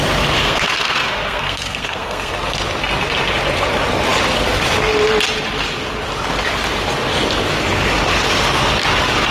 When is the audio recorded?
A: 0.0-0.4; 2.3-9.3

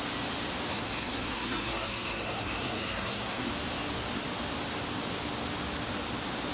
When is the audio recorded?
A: 0.0-0.7; 3.5-6.5

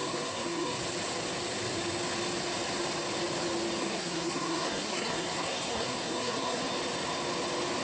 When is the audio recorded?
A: 0.8-3.8; 6.6-7.8

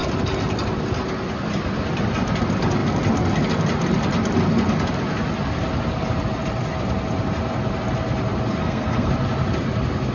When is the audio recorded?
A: 0.0-8.6; 9.1-10.1

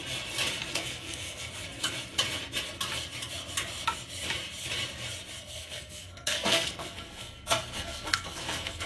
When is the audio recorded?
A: 0.0-0.7; 1.5-5.4

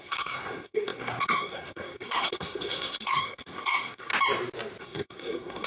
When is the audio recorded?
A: 4.1-4.8

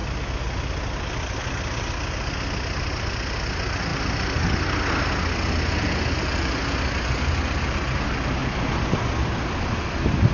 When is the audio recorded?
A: 0.0-10.3